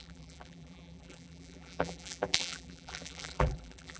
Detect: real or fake fake